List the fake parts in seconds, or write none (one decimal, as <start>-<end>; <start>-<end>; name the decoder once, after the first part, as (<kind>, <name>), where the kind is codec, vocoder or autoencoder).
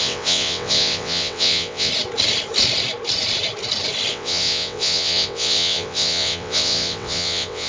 0.0-1.9 (vocoder, WaveNeXt); 4.1-7.7